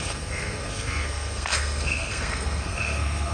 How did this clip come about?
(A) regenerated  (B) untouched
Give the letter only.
A